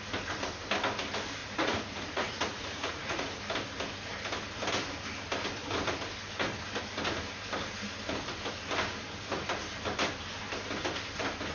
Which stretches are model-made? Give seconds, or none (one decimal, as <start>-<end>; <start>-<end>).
1.4-3.4

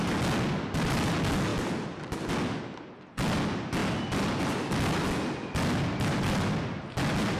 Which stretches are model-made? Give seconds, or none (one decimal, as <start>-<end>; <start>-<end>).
none

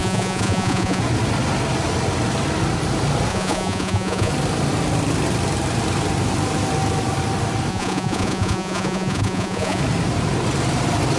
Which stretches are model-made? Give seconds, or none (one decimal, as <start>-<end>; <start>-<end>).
0.0-1.0; 3.3-4.3; 7.7-9.8

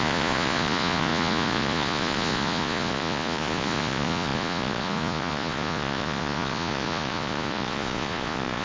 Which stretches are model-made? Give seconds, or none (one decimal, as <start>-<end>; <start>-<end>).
0.0-8.6

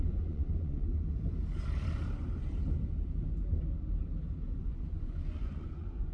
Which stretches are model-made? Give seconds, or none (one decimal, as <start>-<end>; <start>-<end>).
0.0-0.9; 4.6-6.1

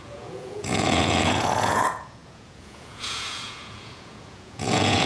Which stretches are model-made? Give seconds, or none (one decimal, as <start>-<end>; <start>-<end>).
0.0-5.1

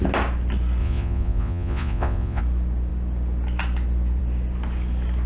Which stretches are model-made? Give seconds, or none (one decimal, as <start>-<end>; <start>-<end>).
0.8-2.4

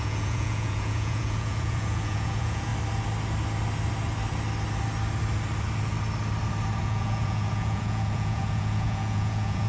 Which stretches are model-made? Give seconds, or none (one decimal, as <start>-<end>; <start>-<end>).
0.0-2.7; 6.8-9.7